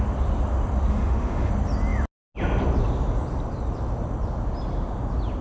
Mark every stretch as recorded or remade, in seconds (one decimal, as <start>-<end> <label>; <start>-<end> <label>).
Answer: 0.0-0.9 recorded; 0.9-1.5 remade; 1.5-5.4 recorded